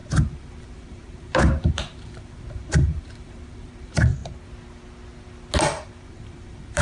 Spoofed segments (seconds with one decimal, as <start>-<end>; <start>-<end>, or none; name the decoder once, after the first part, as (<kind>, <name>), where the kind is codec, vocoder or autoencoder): 0.0-4.2 (vocoder, BigVGAN v2); 5.6-6.8